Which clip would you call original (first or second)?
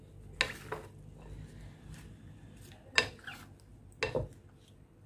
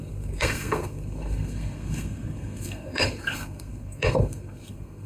first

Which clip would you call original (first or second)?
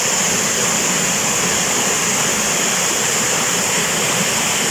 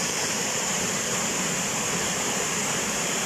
first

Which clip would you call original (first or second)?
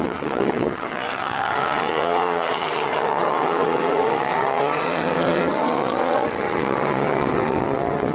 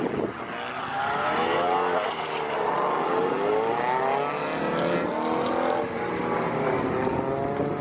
second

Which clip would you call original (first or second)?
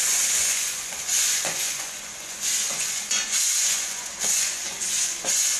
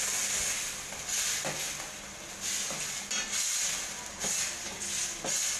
second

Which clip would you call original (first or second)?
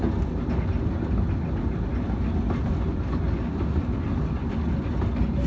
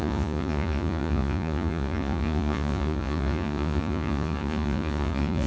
first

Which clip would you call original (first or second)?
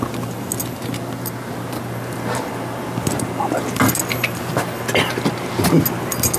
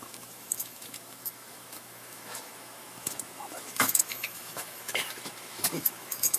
first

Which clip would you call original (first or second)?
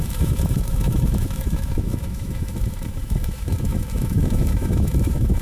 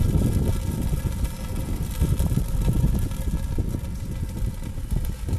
second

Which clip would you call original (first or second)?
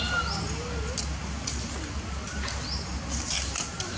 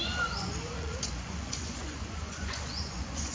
first